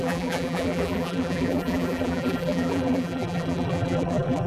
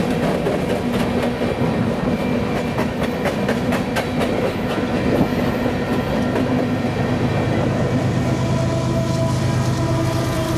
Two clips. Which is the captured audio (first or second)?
second